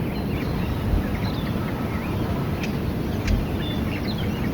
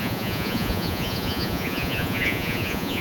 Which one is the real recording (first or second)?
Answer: first